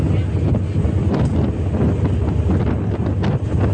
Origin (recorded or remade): recorded